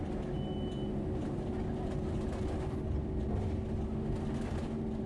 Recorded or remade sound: recorded